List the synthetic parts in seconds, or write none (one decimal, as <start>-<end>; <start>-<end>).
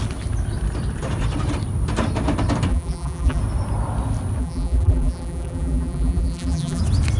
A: 2.7-3.4; 4.4-6.8